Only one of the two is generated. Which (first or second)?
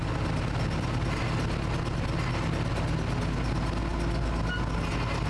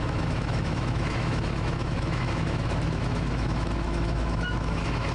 second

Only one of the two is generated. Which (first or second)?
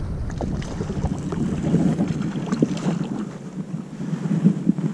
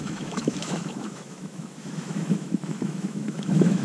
second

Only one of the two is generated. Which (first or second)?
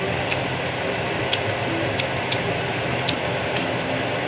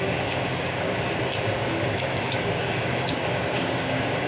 second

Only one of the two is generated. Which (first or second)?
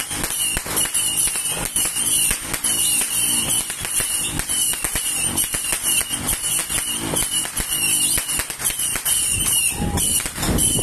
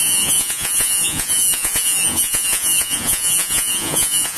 second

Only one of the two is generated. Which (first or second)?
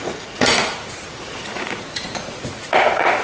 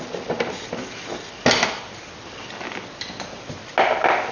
first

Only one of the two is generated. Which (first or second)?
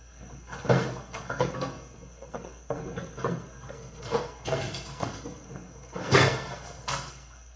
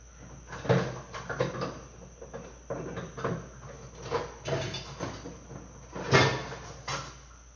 first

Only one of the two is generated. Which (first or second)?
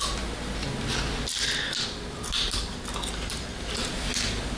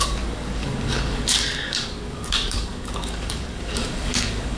second